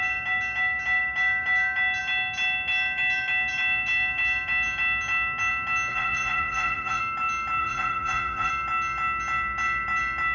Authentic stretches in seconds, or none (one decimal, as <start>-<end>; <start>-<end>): 0.0-5.9; 7.0-7.6; 8.5-10.3